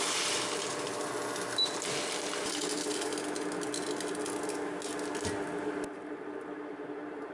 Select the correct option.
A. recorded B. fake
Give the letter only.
A